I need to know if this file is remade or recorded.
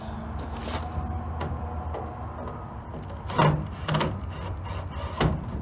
recorded